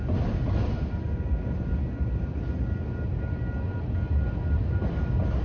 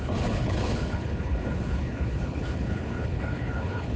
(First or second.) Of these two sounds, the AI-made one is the second